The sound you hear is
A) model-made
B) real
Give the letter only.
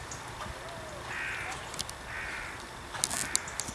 B